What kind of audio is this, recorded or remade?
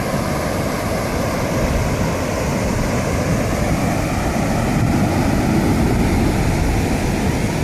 recorded